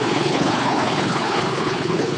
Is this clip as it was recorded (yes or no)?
no